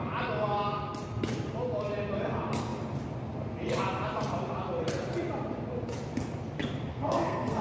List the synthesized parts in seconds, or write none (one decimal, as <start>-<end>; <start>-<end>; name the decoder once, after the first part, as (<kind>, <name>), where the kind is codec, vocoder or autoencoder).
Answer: 6.9-7.6 (codec, SNAC)